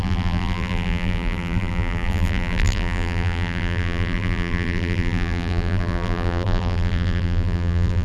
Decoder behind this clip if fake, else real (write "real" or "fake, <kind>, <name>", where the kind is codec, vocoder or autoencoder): fake, vocoder, BigVGAN v2